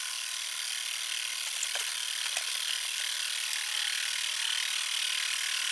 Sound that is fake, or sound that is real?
real